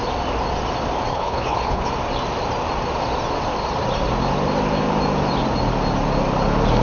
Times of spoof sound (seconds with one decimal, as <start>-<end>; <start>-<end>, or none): 1.1-1.9